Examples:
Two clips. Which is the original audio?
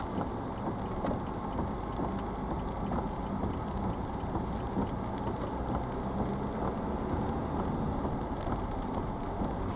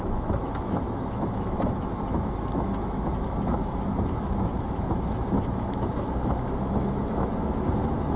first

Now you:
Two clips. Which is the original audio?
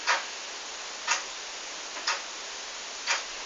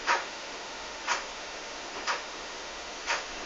first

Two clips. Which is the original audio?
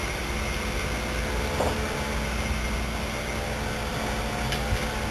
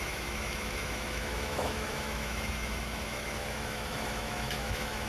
first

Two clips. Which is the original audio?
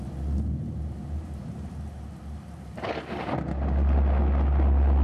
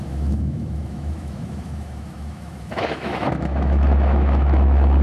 first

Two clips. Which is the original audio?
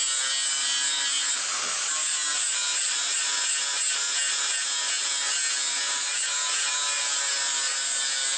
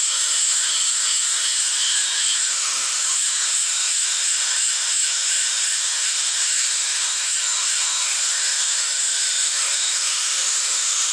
first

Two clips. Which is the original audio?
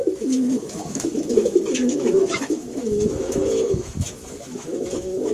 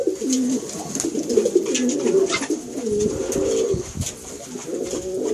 second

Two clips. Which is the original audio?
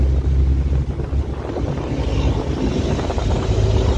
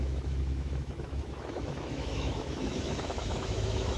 first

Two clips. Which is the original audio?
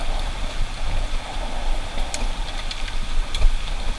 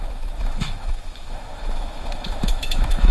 first